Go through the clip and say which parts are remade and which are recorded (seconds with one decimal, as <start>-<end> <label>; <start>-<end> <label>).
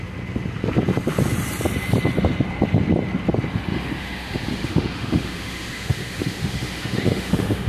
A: 0.0-3.7 recorded; 3.7-7.7 remade